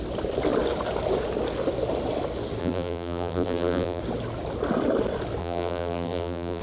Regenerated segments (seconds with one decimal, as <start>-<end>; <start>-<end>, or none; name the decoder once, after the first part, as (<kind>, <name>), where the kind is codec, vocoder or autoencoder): 2.6-4.0 (vocoder, BigVGAN v2); 5.4-6.6